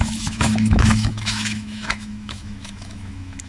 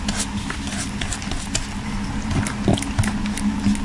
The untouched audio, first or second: second